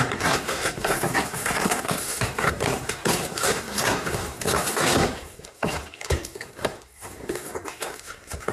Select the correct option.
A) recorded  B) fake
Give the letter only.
B